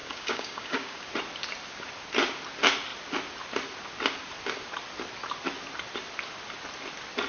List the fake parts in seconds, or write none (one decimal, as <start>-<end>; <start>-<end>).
0.0-1.0